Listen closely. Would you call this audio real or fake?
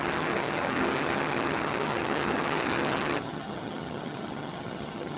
fake